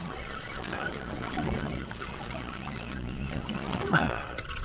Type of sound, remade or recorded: remade